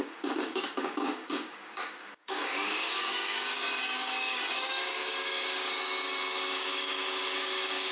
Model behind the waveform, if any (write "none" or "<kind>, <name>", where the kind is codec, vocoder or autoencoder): codec, DAC